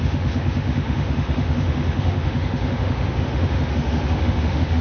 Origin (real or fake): fake